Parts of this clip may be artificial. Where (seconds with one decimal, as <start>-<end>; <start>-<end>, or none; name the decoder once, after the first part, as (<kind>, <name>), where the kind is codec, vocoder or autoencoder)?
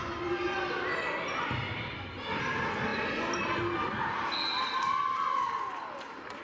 0.0-2.9 (vocoder, BigVGAN v2); 4.0-6.4